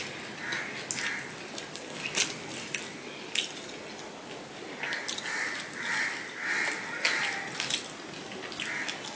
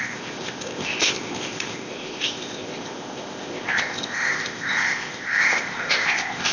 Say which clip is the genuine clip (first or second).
first